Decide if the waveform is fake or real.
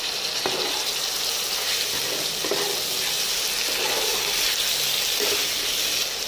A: real